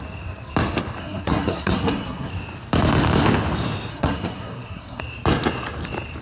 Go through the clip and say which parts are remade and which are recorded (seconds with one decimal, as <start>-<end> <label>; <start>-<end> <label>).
0.0-1.0 recorded; 1.0-2.3 remade; 2.3-3.9 recorded; 3.9-5.0 remade; 5.0-6.2 recorded